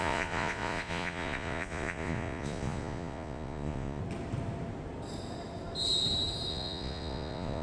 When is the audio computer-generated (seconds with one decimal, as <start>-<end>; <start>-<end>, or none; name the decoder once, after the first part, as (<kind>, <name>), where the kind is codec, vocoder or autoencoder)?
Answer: 0.0-4.0 (vocoder, Vocos); 6.5-7.6